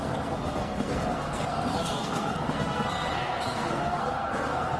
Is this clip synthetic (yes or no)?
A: yes